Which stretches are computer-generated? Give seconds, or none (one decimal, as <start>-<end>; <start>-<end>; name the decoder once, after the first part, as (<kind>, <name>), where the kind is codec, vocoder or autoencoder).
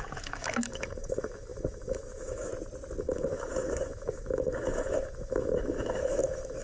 0.0-2.5 (autoencoder, DAC-VAE); 3.0-6.6